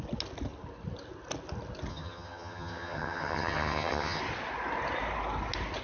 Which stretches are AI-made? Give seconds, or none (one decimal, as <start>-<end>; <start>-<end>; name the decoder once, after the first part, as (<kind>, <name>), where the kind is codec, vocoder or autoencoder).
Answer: 1.9-4.2 (vocoder, HiFi-GAN)